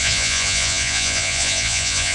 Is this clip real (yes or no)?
no